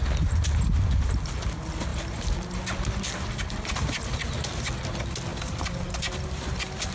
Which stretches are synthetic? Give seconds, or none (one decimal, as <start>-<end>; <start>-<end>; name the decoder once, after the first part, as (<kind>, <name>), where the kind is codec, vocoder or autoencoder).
5.3-6.9 (vocoder, BigVGAN v2)